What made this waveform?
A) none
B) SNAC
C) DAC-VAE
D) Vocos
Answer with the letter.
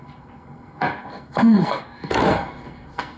B